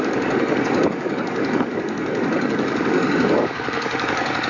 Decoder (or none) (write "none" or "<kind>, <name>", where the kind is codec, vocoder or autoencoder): codec, DAC